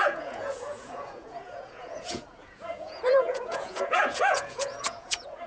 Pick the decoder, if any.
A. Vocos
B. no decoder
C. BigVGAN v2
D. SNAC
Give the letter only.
A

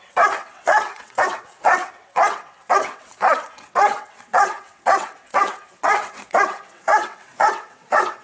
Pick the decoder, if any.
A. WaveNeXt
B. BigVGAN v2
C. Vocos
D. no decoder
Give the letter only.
A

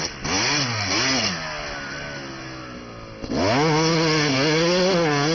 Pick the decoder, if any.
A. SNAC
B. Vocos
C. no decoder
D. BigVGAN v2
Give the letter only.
C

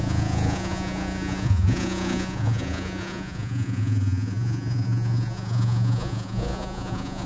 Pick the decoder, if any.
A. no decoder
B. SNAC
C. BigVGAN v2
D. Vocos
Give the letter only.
D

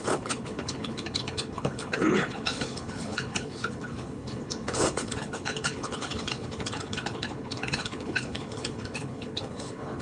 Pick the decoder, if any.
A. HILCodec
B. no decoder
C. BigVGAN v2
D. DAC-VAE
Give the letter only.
A